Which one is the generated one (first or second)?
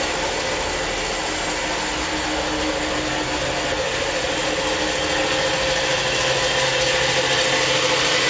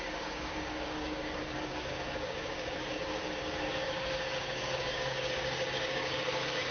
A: second